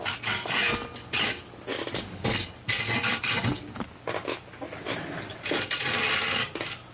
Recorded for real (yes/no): yes